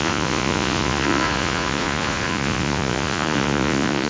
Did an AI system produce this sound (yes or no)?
yes